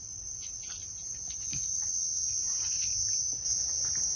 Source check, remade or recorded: recorded